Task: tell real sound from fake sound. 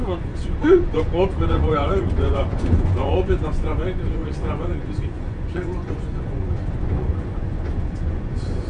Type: fake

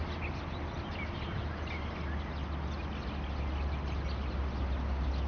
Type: real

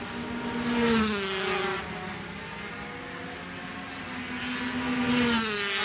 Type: real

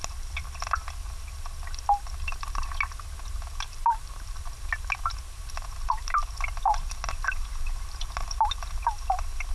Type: real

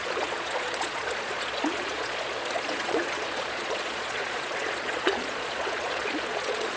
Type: fake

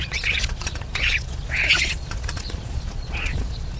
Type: fake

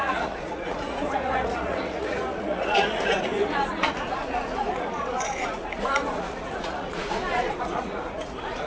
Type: fake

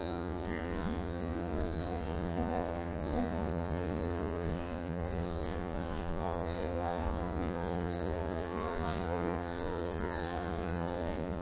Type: fake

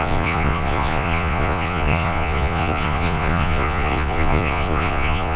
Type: fake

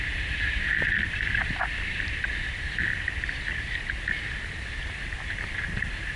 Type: real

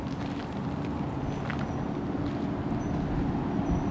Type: real